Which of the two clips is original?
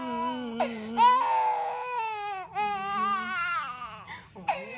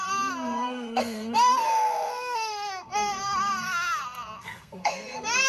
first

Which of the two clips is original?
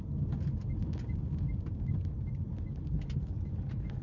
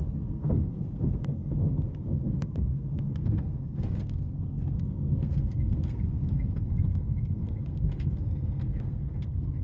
first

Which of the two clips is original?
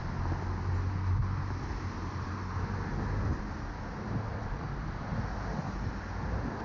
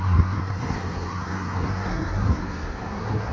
first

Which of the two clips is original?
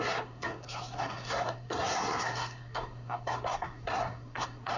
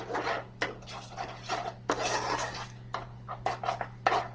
second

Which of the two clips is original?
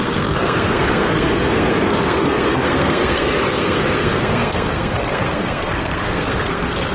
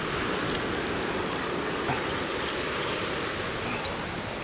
second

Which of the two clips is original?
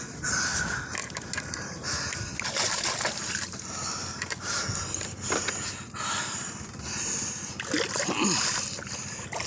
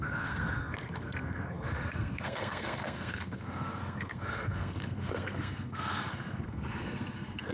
first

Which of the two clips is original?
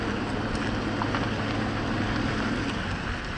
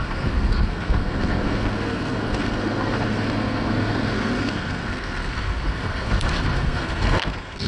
first